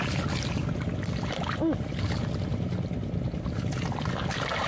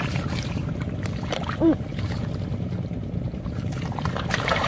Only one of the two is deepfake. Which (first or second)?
second